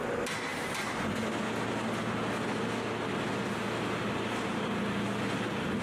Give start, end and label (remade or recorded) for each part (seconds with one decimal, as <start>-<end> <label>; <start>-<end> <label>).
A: 0.0-5.8 recorded